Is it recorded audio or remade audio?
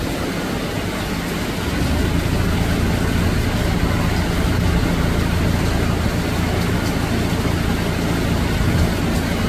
recorded